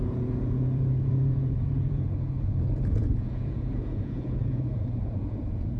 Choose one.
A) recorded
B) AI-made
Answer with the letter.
B